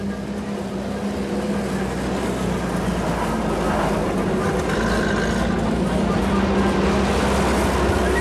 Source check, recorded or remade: recorded